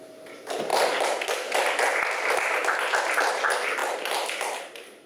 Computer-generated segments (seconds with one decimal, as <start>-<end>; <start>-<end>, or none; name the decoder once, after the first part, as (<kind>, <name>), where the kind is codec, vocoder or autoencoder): none